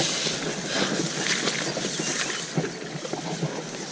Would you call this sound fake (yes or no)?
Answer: no